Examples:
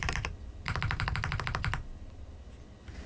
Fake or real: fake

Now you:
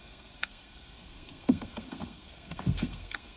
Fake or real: fake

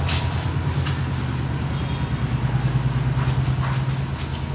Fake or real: real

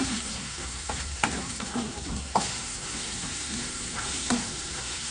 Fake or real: fake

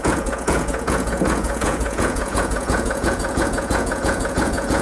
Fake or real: fake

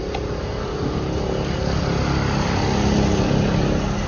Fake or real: real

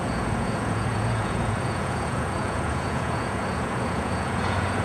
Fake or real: fake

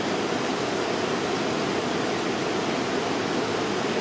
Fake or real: real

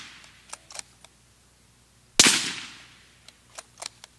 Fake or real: real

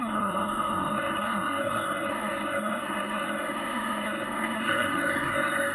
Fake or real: fake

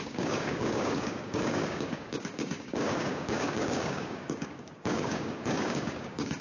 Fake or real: fake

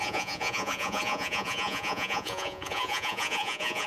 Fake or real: fake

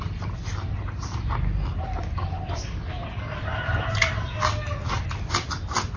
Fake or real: real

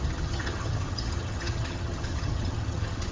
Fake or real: fake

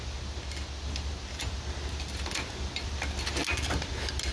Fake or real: real